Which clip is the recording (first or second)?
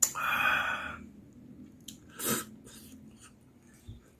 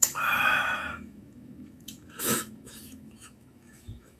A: first